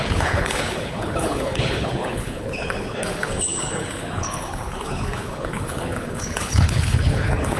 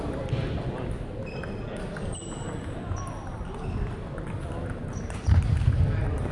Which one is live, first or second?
second